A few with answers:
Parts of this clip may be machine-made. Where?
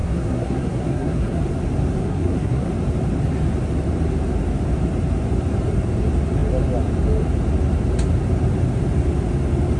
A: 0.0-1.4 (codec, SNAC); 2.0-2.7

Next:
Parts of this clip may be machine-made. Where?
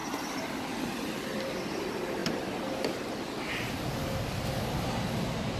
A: 0.0-2.2 (vocoder, BigVGAN v2); 4.6-5.6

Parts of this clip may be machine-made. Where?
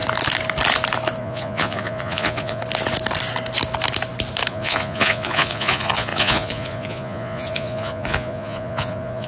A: 1.2-2.6 (vocoder, Vocos); 4.5-9.3